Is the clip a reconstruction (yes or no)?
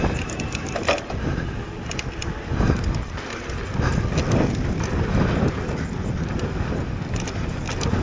no